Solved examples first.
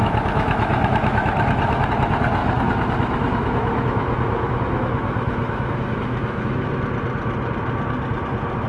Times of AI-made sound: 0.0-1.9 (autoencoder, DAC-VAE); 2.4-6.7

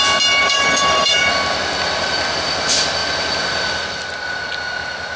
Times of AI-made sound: 0.4-1.3 (codec, DAC)

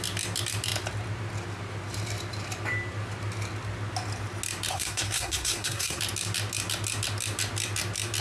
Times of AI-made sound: 4.7-6.0 (codec, SNAC)

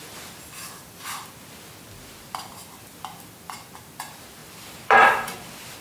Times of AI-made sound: 4.4-5.8 (vocoder, BigVGAN v2)

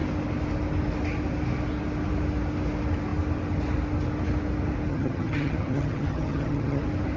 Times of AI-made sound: 4.9-6.8 (vocoder, HiFi-GAN)

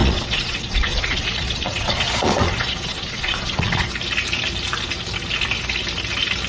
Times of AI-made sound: 0.0-3.9 (vocoder, Vocos)

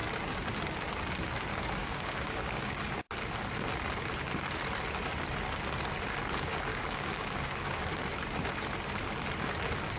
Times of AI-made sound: 1.8-2.8 (codec, DAC); 6.7-7.8

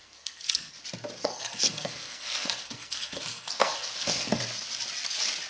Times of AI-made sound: 0.0-0.7 (codec, SNAC); 1.2-4.4